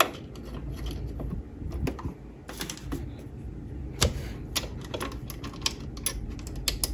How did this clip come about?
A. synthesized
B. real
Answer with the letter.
B